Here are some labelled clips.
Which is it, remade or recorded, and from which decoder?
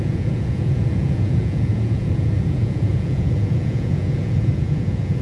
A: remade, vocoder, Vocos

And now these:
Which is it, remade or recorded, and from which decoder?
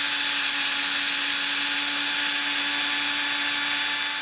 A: recorded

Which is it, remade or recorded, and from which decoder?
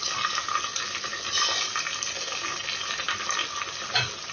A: recorded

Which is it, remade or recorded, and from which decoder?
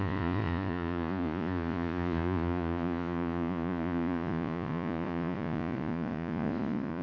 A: remade, vocoder, Vocos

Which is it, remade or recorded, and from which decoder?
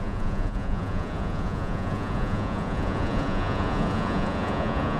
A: remade, vocoder, Vocos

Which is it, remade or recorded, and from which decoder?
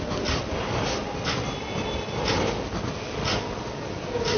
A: recorded